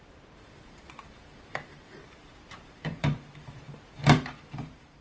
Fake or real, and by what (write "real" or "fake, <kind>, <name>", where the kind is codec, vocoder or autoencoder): fake, vocoder, BigVGAN v2